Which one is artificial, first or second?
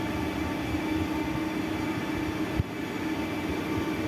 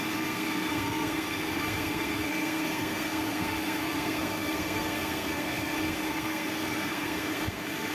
second